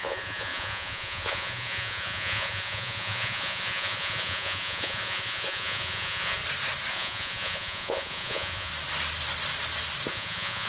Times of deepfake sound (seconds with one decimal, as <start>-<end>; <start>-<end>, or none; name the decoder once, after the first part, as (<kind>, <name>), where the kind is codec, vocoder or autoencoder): 0.0-6.4 (vocoder, Vocos); 6.9-8.7; 10.1-10.7